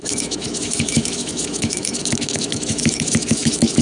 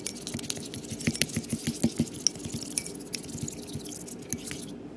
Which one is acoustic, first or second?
second